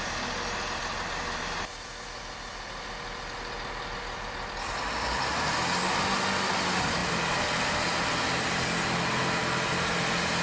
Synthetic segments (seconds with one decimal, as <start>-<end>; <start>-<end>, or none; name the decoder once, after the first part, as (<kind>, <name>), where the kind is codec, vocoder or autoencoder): none